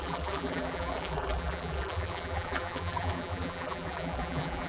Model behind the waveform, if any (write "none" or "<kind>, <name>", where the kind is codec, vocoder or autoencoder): vocoder, BigVGAN v2